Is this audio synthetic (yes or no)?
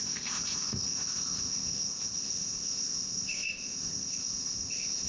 yes